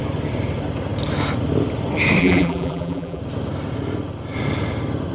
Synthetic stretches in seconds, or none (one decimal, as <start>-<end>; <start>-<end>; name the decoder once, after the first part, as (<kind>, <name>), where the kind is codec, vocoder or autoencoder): 2.2-3.2 (vocoder, BigVGAN v2)